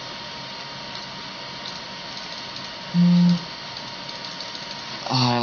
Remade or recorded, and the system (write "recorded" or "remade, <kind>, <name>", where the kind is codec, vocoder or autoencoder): recorded